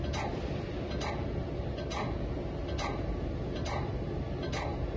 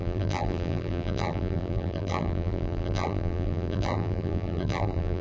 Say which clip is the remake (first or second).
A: second